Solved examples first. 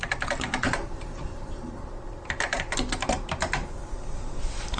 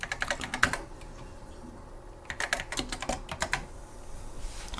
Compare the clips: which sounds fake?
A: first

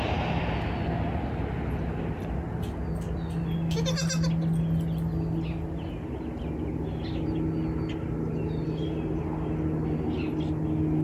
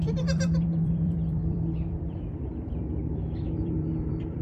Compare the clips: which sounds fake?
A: second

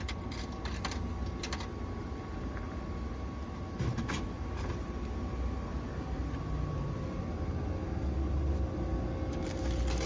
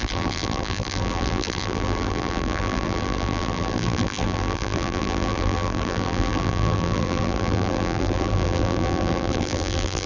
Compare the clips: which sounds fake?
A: second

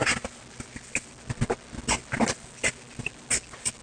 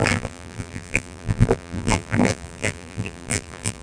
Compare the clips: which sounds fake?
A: second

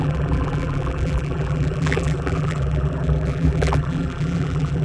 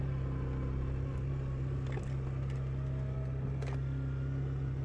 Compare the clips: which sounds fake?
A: first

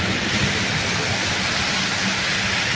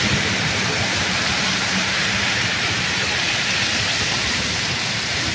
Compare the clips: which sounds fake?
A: second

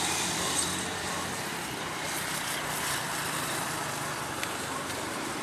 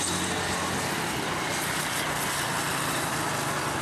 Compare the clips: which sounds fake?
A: first